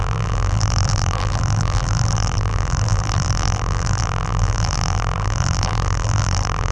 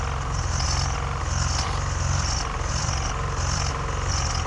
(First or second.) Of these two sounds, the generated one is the first